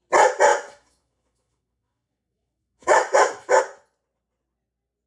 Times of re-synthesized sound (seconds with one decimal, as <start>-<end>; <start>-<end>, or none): 0.5-3.6